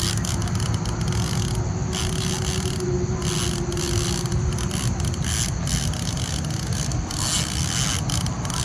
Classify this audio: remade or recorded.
recorded